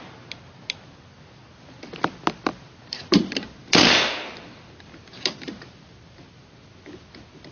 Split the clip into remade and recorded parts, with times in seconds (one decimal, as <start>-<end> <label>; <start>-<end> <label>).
0.0-7.5 recorded